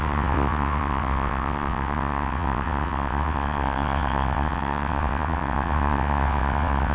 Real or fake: fake